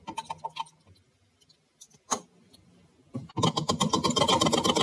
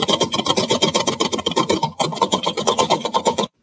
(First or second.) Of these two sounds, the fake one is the second